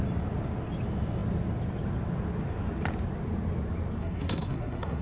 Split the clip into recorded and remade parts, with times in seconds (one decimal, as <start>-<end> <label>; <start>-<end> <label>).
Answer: 0.0-4.0 recorded; 4.0-5.0 remade